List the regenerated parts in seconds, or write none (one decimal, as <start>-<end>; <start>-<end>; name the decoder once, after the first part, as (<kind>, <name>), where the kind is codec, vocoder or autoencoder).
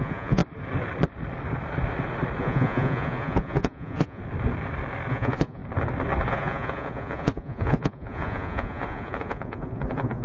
0.0-0.4 (vocoder, Vocos); 2.4-4.2; 5.1-5.6; 6.3-10.2